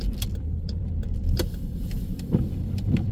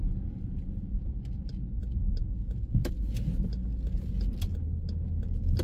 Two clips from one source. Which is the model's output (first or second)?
first